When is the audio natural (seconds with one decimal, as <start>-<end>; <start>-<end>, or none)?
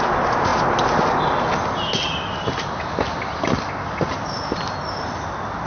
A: 0.0-5.7